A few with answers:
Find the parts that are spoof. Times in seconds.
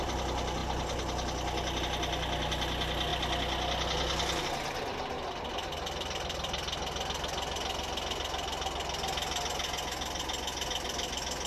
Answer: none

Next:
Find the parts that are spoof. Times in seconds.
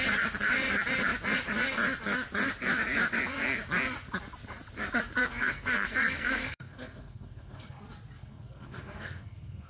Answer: 5.2-7.8 (codec, SNAC); 8.2-9.7